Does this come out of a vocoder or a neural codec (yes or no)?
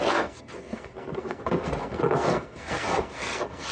yes